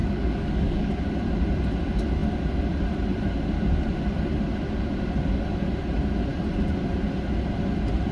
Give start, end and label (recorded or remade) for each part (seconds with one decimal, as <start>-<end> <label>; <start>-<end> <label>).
0.0-0.9 remade; 0.9-8.1 recorded

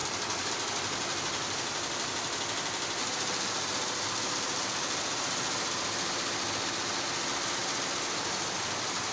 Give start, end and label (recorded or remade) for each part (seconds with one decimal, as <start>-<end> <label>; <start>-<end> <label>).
0.0-0.5 remade; 0.5-9.1 recorded

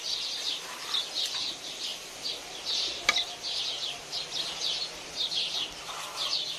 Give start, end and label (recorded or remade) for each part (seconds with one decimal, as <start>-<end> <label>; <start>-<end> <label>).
0.0-6.6 recorded

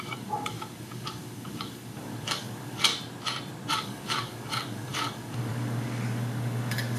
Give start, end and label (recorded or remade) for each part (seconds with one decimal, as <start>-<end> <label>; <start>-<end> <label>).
0.0-2.9 remade; 2.9-3.7 recorded; 3.7-7.0 remade